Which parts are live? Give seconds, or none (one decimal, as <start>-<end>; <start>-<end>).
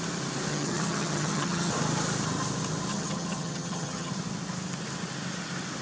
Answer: 0.0-0.5; 1.7-2.9; 4.1-5.8